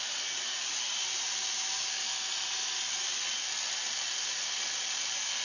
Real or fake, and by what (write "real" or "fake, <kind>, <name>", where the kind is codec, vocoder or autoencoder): real